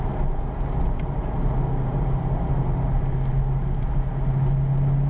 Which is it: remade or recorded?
recorded